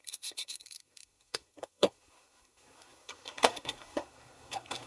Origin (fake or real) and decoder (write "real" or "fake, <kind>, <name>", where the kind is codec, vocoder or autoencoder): fake, codec, SNAC